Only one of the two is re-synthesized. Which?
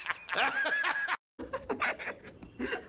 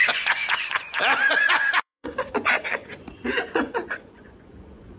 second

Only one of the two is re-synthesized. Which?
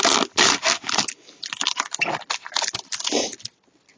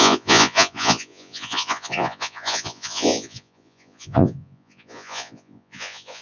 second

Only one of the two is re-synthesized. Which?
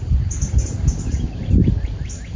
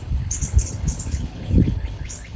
second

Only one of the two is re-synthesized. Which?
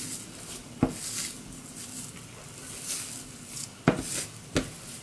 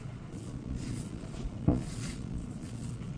second